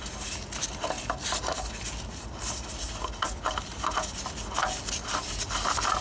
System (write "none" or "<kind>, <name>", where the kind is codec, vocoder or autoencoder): none